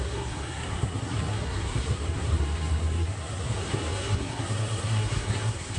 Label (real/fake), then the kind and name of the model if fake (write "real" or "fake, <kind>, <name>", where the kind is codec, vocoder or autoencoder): fake, codec, SNAC